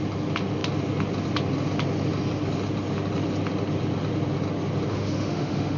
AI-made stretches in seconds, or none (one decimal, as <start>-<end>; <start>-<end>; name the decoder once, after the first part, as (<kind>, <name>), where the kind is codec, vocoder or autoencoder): 4.9-5.8 (autoencoder, DAC-VAE)